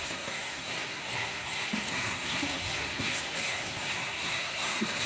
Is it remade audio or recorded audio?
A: remade